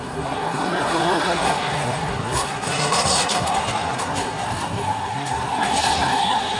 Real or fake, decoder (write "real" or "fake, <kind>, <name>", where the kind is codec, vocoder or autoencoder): fake, codec, SNAC